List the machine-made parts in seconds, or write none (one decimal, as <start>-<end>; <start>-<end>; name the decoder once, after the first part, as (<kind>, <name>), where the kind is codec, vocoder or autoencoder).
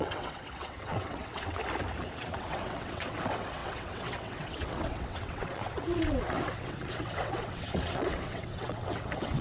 0.0-1.6 (vocoder, WaveNeXt); 2.2-9.4